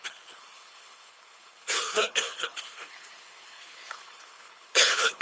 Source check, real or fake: fake